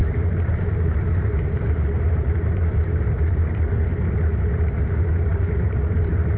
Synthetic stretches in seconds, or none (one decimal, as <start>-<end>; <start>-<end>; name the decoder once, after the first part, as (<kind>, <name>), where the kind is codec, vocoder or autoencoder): 0.0-2.6 (vocoder, BigVGAN v2); 3.1-3.9; 4.5-6.4